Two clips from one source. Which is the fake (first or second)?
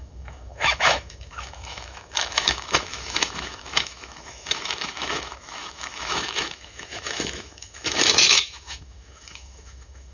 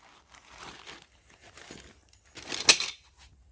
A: first